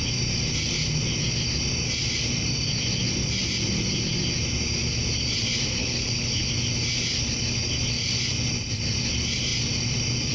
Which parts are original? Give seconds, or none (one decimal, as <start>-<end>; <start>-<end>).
0.0-5.8; 6.5-10.3